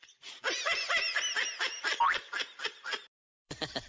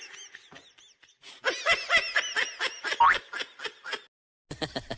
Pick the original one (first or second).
second